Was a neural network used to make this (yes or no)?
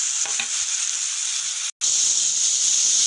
no